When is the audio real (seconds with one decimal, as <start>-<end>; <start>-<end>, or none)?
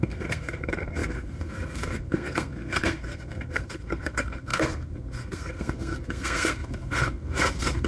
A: none